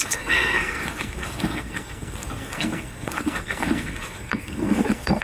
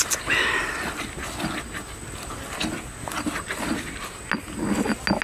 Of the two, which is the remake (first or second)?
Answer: first